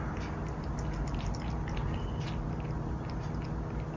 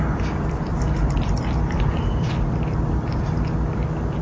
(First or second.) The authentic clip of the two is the first